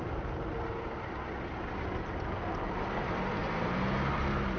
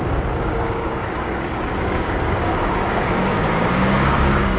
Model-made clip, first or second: second